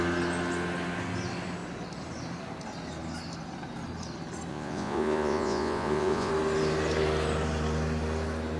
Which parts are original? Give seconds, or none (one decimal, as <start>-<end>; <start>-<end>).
0.0-4.5; 6.3-8.6